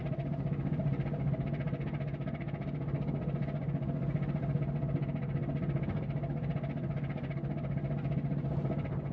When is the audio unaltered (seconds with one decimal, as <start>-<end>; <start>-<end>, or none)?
0.0-9.1

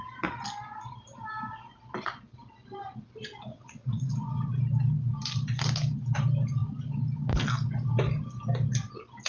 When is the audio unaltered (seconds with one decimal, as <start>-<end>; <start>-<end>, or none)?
0.0-3.5; 4.5-9.3